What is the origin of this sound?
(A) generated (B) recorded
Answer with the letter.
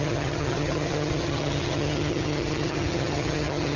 A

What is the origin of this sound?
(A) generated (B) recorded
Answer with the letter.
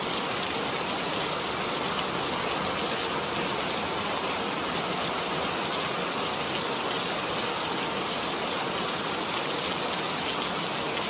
B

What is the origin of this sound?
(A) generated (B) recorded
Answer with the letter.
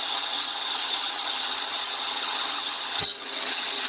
A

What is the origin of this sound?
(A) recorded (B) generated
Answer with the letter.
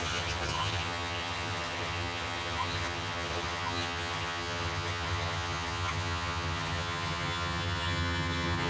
B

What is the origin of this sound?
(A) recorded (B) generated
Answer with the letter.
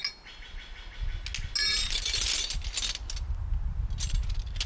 A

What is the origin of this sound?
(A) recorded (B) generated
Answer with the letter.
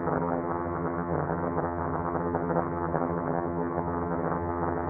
B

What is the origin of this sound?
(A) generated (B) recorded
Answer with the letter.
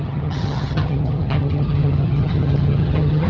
A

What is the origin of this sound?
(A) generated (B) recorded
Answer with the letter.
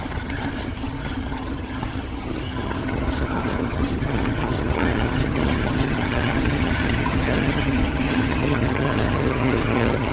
A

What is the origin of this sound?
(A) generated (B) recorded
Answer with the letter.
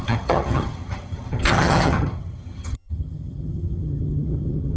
A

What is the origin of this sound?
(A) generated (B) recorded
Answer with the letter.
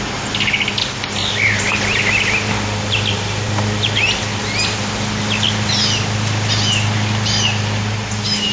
B